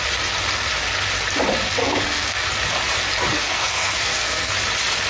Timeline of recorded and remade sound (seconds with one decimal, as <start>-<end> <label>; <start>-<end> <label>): 0.0-1.8 recorded; 1.8-2.5 remade; 2.5-3.3 recorded; 3.3-4.5 remade; 4.5-5.1 recorded